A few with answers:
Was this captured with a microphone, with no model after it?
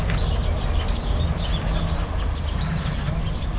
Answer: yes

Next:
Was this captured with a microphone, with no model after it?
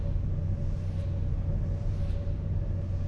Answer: yes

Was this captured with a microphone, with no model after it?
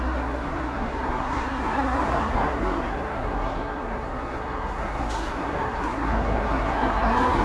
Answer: no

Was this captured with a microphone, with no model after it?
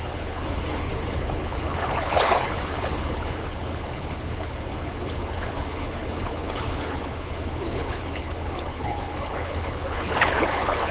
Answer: no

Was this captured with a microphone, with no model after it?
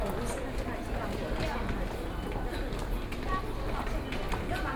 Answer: yes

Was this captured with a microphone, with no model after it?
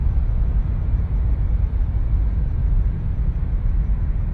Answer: no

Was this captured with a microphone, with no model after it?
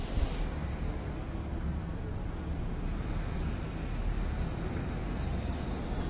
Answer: yes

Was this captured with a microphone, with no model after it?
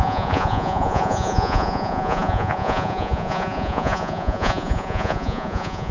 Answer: no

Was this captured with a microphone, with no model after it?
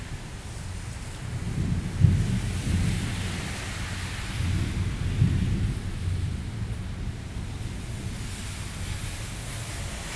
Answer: yes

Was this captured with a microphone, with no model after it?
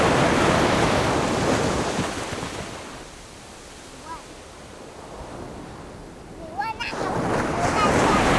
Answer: yes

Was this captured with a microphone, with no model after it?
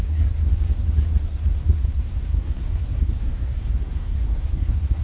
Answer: no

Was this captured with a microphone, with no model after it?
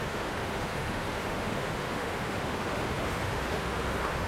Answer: no